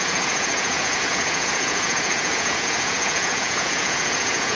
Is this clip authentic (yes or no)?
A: no